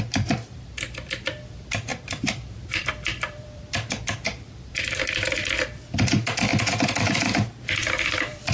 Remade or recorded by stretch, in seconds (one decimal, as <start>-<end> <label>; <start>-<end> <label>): 0.0-6.5 remade; 6.5-7.0 recorded; 7.0-8.5 remade